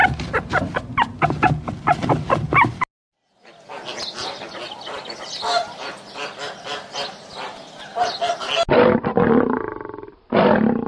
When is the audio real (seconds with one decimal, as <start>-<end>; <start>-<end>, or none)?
0.0-10.9

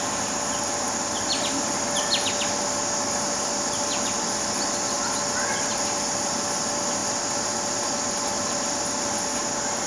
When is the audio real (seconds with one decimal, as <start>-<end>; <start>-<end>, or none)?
0.0-9.9

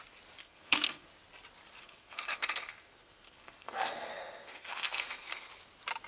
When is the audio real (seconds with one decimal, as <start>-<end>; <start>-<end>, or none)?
0.0-0.4; 1.1-1.8; 5.5-6.1

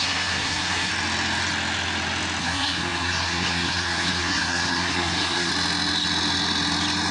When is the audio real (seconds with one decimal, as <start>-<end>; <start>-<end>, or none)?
0.9-2.4; 5.5-7.1